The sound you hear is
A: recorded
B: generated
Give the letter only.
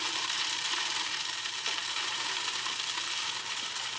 B